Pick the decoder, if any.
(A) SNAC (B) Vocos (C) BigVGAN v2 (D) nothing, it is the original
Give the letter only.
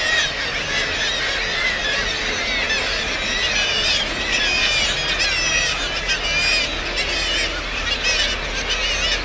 D